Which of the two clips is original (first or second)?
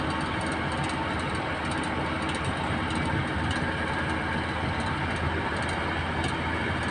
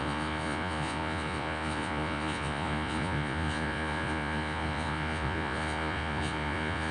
first